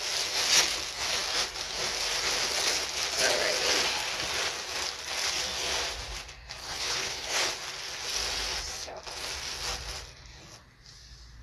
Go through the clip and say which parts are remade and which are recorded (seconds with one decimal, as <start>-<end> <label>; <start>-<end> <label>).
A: 0.0-6.6 recorded; 6.6-7.5 remade; 7.5-11.4 recorded